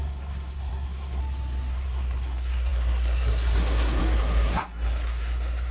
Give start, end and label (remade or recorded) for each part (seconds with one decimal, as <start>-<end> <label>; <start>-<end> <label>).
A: 0.0-1.2 remade; 1.2-1.7 recorded; 1.7-5.7 remade